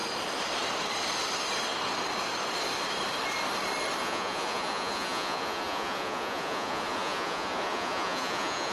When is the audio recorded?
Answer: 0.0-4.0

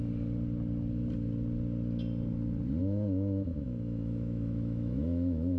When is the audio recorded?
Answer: 0.0-2.8

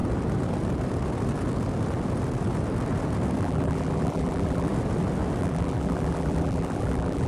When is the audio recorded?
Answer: 0.0-3.4; 4.7-5.4

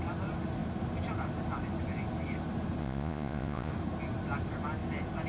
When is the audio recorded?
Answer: 0.0-2.8; 3.7-5.3